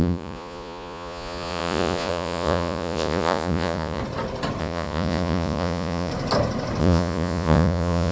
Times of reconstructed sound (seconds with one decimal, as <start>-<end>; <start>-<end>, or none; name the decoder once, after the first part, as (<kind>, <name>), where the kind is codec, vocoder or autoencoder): 0.0-4.0 (vocoder, Vocos); 4.6-6.1; 6.8-8.1